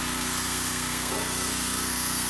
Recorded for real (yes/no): no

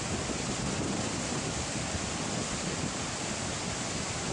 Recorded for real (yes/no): yes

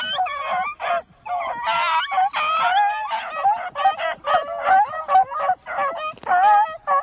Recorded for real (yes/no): yes